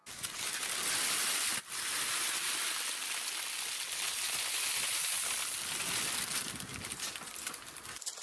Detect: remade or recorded recorded